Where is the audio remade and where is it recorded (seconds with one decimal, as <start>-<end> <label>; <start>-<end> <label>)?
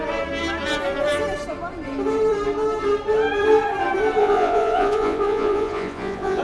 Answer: 0.0-4.2 recorded; 4.2-6.4 remade